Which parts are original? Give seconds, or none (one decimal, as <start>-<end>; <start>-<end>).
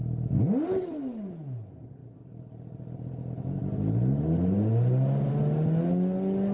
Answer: 0.0-6.5